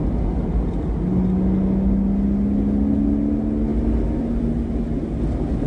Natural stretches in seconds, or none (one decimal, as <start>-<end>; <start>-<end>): 0.0-5.7

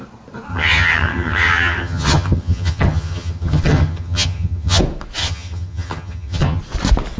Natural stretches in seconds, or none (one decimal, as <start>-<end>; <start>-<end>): 0.0-0.5; 4.8-5.2; 6.6-7.2